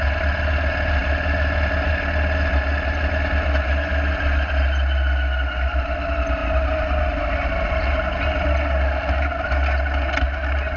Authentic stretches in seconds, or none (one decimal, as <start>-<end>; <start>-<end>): 0.0-10.8